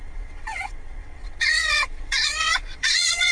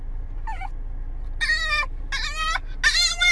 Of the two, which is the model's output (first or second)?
first